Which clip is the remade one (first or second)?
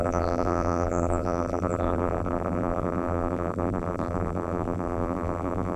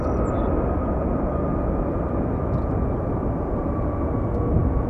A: first